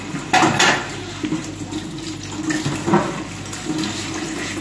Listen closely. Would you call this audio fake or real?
real